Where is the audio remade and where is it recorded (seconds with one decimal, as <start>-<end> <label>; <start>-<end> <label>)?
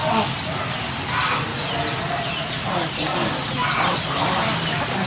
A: 0.0-1.5 remade; 1.5-4.6 recorded; 4.6-5.1 remade